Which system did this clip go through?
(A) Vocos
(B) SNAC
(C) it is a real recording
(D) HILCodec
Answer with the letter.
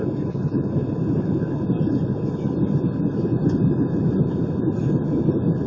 C